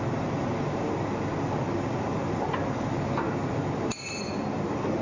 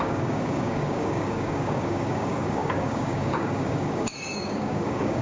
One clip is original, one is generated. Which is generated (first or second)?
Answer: second